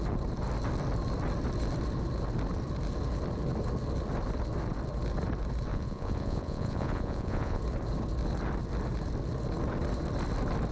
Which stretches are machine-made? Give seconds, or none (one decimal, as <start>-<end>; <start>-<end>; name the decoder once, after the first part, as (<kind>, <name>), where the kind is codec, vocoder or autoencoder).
5.7-7.6 (vocoder, Vocos)